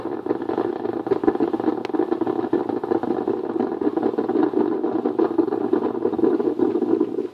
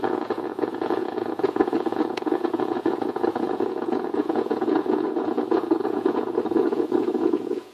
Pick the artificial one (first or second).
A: second